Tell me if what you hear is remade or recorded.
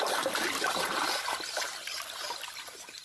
recorded